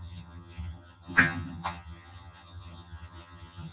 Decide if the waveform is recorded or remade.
remade